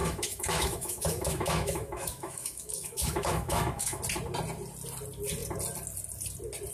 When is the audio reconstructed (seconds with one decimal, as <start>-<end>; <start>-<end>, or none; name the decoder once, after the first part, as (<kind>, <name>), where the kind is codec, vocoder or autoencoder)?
0.0-4.0 (autoencoder, DAC-VAE)